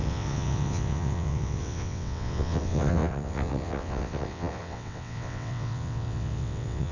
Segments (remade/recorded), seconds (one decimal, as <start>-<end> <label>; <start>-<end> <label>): 0.0-6.9 remade

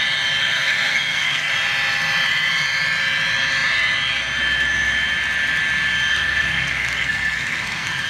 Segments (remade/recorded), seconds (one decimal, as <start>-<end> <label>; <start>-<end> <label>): 0.0-0.4 recorded; 0.4-1.5 remade; 1.5-6.1 recorded; 6.1-8.1 remade

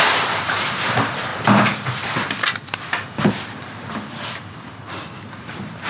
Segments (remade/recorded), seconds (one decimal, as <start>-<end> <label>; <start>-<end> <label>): 0.0-1.3 remade; 1.3-3.3 recorded; 3.3-5.9 remade

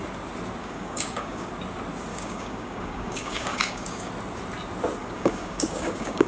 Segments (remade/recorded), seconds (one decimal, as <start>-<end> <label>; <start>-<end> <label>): 0.0-0.6 recorded; 0.6-1.5 remade; 1.5-2.1 recorded; 2.1-4.1 remade; 4.1-5.0 recorded; 5.0-6.3 remade

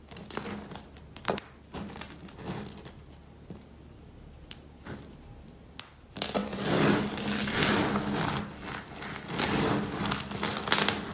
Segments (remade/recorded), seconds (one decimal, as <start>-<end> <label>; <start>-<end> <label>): 0.0-11.1 recorded

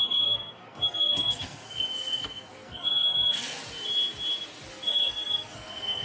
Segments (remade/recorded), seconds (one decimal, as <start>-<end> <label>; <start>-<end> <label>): 0.0-3.6 remade; 3.6-4.7 recorded; 4.7-6.0 remade

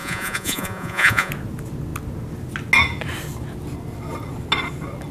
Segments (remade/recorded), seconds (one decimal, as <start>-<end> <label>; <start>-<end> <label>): 0.0-1.3 remade; 1.3-5.1 recorded